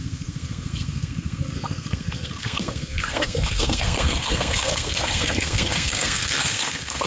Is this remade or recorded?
remade